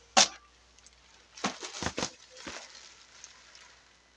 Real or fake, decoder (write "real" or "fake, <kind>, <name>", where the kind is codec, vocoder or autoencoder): real